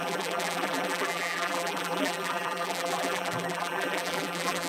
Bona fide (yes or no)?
no